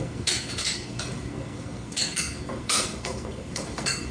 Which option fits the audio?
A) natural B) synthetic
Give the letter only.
B